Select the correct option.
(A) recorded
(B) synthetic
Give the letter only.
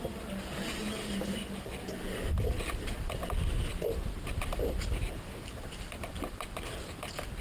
A